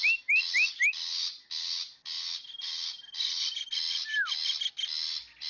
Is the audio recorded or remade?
recorded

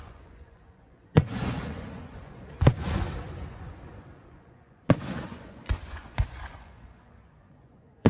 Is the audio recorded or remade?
remade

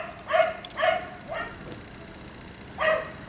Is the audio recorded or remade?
recorded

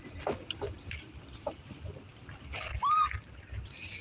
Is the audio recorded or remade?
recorded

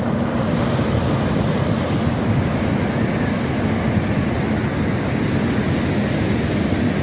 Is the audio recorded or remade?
recorded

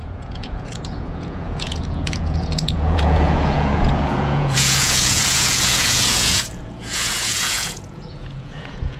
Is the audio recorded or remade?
remade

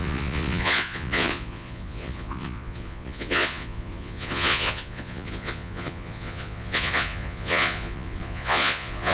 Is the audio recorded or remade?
remade